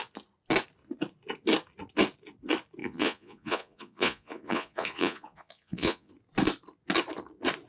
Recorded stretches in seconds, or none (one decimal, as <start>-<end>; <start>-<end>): 0.0-2.8; 6.1-7.7